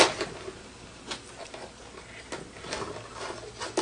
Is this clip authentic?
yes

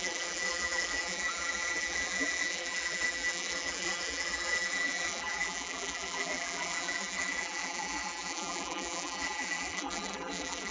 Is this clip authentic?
no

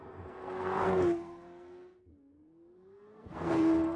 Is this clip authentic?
no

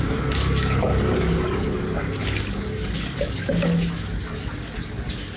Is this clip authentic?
no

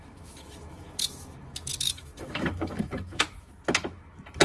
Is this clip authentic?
no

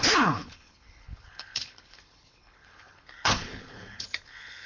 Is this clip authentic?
no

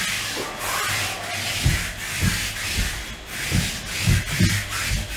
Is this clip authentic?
yes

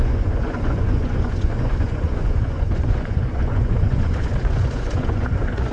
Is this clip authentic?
no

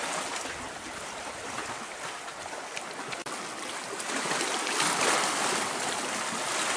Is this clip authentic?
yes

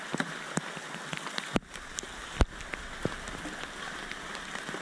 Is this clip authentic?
yes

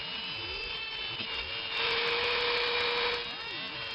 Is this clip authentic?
yes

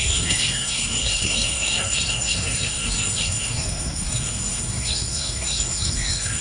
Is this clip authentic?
no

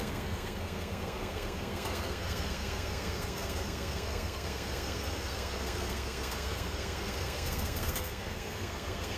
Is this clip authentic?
no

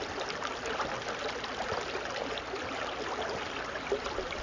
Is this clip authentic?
yes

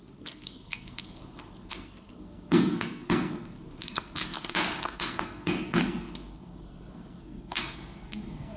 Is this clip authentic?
no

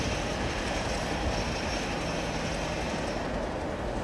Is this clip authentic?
yes